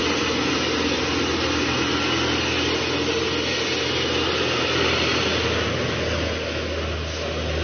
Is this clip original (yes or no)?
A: yes